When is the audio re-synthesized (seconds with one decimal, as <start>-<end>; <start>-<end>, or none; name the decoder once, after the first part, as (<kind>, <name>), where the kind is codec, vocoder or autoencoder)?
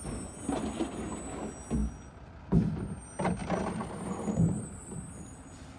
1.8-2.4 (vocoder, BigVGAN v2); 3.4-5.8